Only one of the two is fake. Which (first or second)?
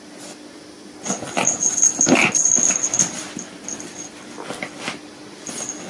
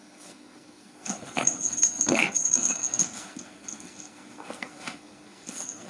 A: second